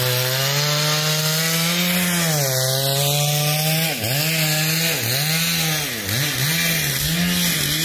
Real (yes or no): yes